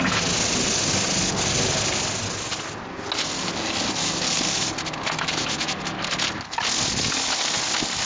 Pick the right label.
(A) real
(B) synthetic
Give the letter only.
A